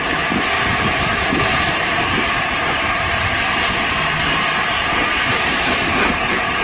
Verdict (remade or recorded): remade